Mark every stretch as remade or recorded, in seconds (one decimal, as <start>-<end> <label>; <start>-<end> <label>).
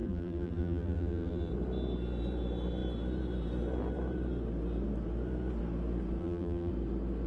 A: 0.0-1.5 remade; 1.5-6.2 recorded; 6.2-6.7 remade; 6.7-7.3 recorded